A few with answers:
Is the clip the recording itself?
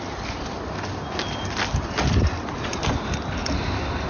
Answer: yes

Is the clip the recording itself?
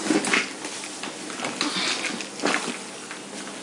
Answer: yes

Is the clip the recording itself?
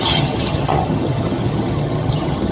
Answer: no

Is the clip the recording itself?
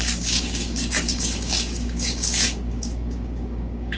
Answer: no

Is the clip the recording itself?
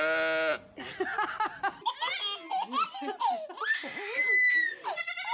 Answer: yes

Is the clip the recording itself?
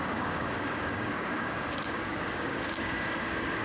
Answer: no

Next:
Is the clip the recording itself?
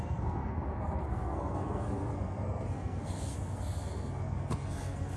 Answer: no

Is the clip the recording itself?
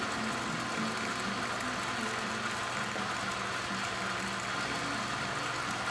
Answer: yes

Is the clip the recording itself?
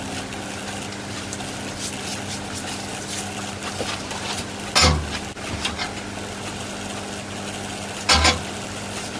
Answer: yes